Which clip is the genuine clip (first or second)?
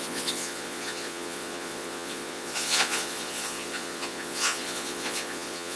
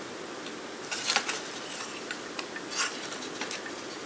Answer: second